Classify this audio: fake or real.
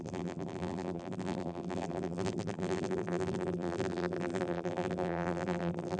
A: fake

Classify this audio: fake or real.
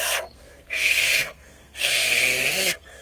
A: fake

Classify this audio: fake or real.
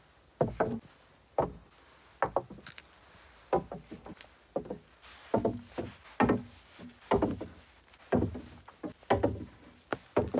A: real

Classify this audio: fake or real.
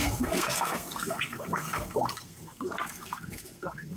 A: fake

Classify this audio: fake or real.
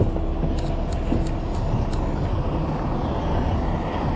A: real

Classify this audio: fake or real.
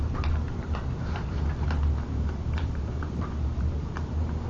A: fake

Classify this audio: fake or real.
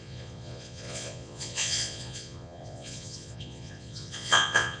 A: fake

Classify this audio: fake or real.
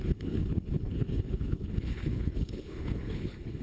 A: fake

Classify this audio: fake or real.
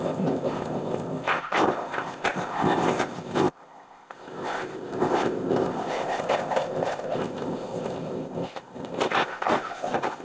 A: fake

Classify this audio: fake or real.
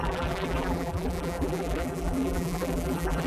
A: fake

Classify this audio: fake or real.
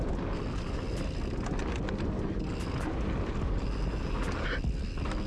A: real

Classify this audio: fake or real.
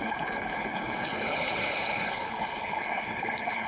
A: fake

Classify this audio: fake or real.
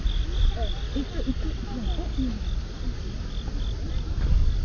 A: real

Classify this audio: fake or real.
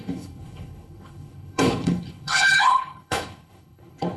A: fake